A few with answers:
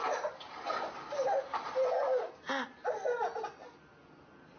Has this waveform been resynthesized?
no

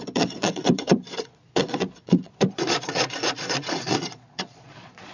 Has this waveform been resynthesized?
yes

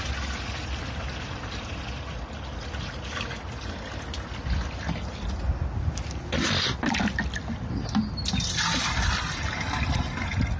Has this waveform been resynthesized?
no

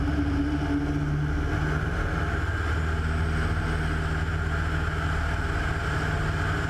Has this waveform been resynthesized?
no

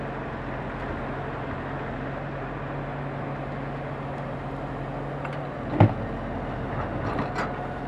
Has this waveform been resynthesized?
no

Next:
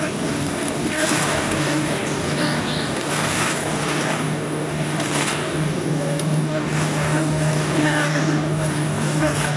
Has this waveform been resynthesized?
yes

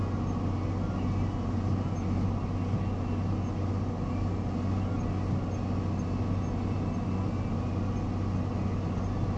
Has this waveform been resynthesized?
no